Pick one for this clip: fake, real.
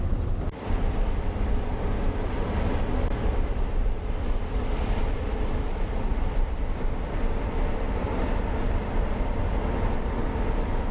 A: fake